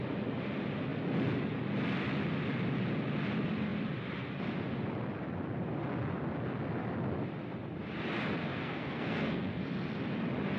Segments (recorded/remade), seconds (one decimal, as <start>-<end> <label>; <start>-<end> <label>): 0.0-8.4 recorded; 8.4-9.6 remade; 9.6-10.6 recorded